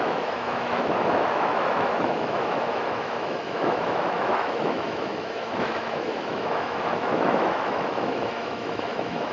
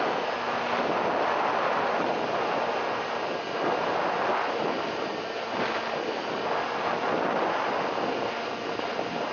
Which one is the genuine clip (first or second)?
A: second